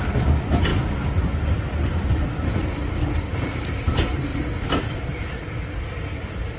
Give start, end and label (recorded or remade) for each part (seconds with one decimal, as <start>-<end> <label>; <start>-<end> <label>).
0.0-6.6 recorded